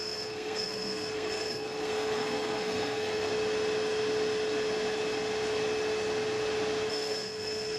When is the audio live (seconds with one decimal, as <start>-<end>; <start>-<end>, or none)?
3.3-6.9